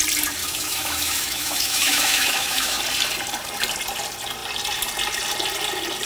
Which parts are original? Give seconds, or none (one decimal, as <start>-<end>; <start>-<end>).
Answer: 0.0-0.4; 2.8-6.1

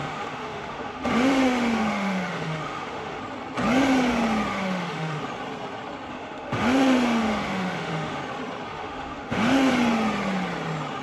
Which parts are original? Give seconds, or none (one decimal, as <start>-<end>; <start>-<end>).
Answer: 3.2-4.5; 5.2-6.1; 8.2-8.7; 9.7-11.0

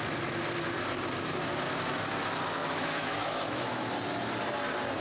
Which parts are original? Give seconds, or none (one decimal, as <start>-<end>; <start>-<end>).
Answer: 0.0-2.6; 3.9-5.0

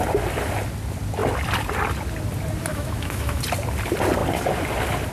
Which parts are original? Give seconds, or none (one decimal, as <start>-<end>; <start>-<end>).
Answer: 0.0-2.7; 3.4-5.1

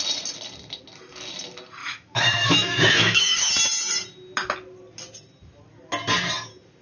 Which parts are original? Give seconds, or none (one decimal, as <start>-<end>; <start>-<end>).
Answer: 0.0-1.8; 3.5-6.8

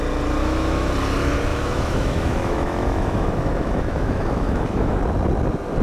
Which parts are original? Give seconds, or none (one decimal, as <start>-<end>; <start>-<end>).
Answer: 0.0-0.4; 0.9-1.5; 5.0-5.8